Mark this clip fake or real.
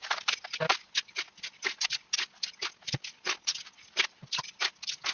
real